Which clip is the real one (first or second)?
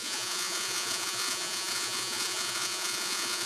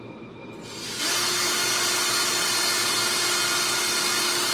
second